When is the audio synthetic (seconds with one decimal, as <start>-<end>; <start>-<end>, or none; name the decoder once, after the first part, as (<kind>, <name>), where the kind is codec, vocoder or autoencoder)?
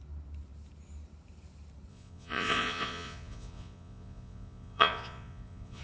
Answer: 1.9-5.8 (vocoder, Vocos)